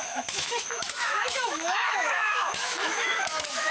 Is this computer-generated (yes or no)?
yes